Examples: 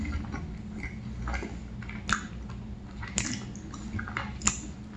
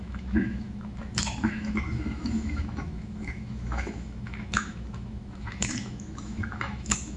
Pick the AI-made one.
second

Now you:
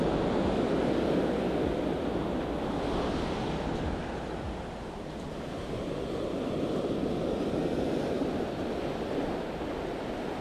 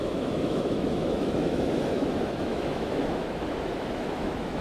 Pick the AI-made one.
second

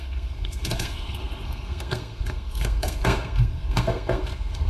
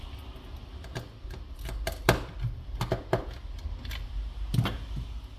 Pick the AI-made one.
first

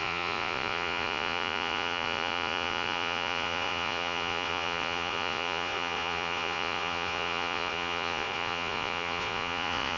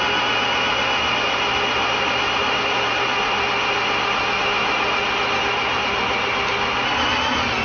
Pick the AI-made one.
first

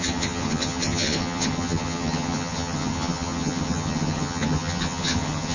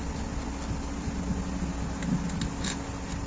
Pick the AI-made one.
first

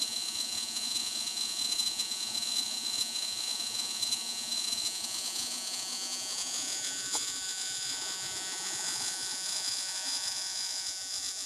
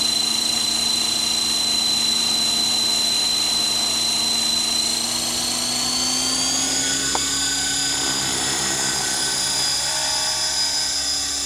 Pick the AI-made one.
first